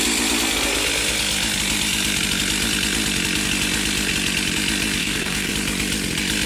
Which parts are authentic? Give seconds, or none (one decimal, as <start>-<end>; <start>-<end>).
0.0-5.0; 5.5-6.5